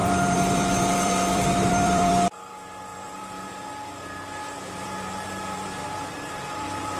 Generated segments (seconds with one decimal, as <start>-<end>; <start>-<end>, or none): 0.0-2.5; 2.9-3.5; 4.4-7.0